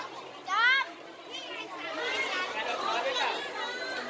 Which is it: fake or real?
real